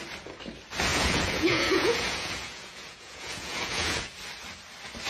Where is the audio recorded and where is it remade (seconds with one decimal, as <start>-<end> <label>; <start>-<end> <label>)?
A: 0.0-0.9 recorded; 0.9-4.0 remade; 4.0-5.1 recorded